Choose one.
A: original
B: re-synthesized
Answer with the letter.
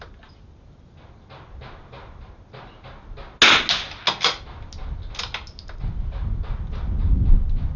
A